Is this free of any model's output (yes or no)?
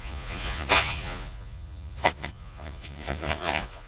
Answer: no